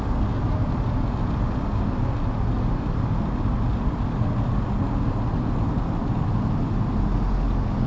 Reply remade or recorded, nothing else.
recorded